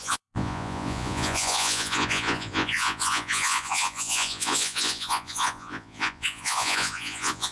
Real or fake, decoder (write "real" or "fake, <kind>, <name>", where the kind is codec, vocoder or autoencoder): fake, vocoder, Vocos